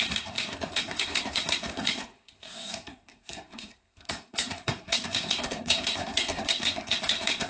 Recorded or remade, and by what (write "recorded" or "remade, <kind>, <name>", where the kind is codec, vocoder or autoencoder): remade, codec, SNAC